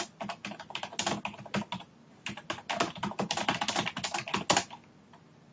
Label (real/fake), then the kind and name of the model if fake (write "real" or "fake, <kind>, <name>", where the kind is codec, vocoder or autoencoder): real